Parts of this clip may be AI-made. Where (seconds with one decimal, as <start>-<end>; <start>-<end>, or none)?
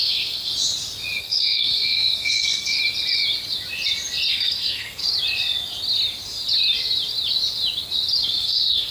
0.0-0.5; 1.2-2.8; 4.3-5.0; 8.2-8.9